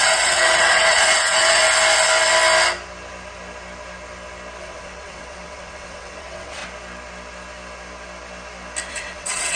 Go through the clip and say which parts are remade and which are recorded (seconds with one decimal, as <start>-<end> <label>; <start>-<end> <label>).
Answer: 0.0-1.6 remade; 1.6-4.6 recorded; 4.6-6.6 remade; 6.6-8.9 recorded; 8.9-9.6 remade

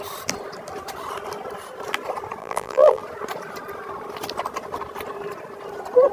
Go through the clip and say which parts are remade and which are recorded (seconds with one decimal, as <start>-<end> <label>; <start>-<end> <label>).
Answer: 0.0-2.4 recorded; 2.4-3.0 remade; 3.0-6.1 recorded

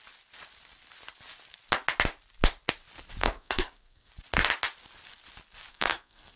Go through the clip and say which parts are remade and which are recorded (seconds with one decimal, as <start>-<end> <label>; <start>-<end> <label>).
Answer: 0.0-3.2 recorded; 3.2-4.1 remade; 4.1-5.7 recorded; 5.7-6.4 remade

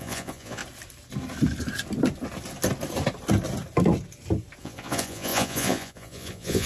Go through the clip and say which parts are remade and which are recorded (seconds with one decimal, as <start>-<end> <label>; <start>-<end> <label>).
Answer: 0.0-0.6 remade; 0.6-4.6 recorded; 4.6-6.7 remade

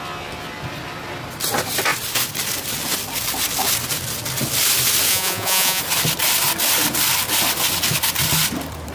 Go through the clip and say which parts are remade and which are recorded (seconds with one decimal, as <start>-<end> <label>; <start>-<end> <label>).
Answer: 0.0-5.1 recorded; 5.1-5.8 remade; 5.8-8.9 recorded